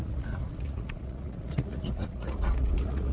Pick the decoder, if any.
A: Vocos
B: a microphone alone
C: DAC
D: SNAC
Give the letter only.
A